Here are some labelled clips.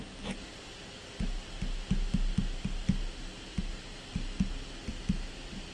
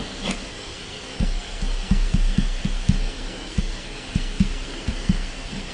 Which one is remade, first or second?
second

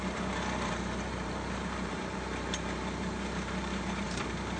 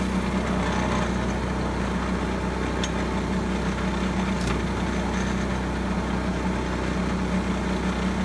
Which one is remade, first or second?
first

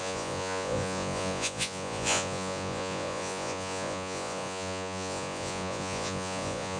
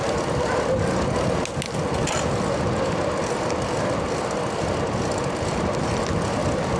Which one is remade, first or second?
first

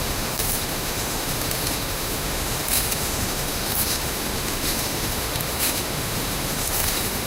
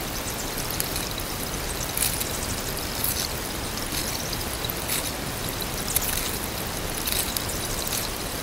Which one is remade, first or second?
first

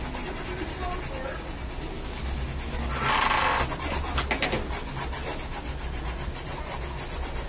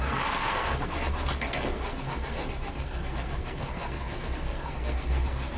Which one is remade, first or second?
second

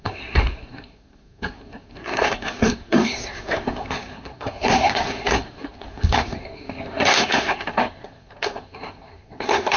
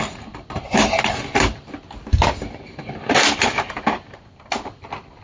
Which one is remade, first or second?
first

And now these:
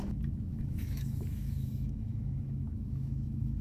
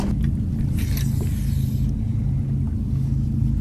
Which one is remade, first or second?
first